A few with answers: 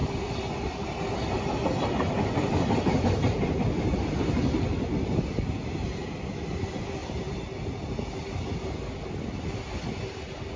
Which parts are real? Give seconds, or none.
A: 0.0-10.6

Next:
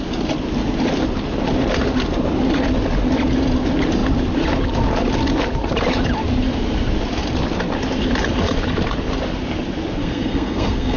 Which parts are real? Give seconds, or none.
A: 0.0-10.0

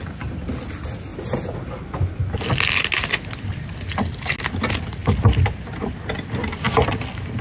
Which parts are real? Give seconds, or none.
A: 0.0-7.4

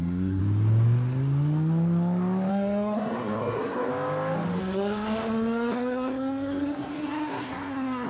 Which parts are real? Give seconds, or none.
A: 0.4-2.5; 3.9-4.6

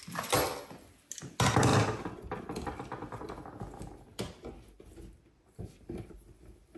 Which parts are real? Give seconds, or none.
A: 0.0-6.8

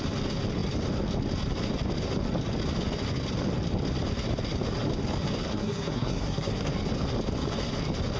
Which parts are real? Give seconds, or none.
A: 0.0-5.5; 6.7-8.2

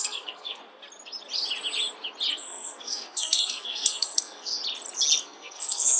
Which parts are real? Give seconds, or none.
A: 0.6-2.3; 4.6-5.2

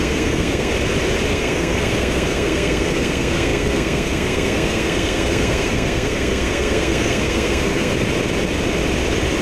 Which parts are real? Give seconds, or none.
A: 0.7-1.3; 7.9-9.4